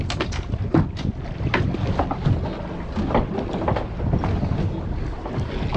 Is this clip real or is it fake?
real